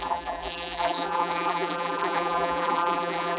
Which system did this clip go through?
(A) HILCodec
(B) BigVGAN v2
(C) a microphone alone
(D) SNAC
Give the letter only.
B